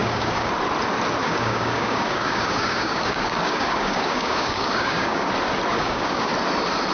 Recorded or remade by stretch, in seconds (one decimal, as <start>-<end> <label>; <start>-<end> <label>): 0.0-0.5 remade; 0.5-1.2 recorded; 1.2-5.3 remade; 5.3-5.7 recorded; 5.7-6.3 remade; 6.3-6.9 recorded